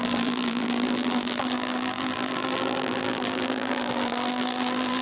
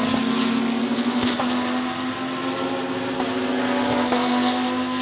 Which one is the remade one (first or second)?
first